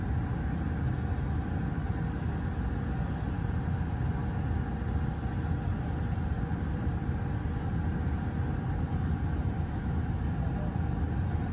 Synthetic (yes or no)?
no